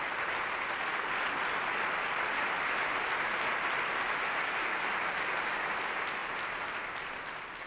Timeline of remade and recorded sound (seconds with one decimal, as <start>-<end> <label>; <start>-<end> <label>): 0.0-7.7 recorded